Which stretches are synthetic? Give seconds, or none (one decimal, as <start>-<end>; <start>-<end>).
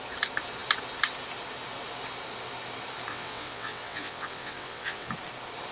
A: 3.1-5.1